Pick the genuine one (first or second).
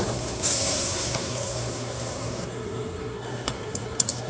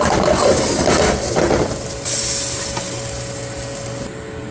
second